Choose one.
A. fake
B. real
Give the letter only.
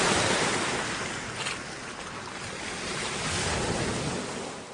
B